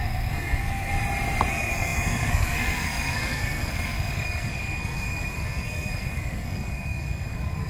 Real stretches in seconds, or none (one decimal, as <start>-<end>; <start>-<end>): 0.9-1.5